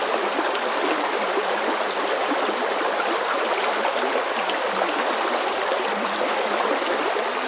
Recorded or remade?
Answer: recorded